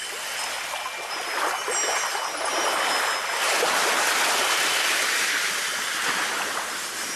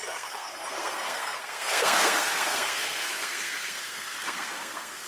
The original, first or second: first